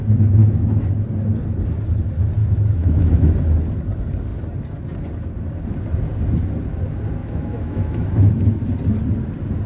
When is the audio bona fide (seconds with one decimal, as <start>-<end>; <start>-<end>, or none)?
0.0-0.4; 0.9-2.4; 3.3-7.2; 8.3-9.7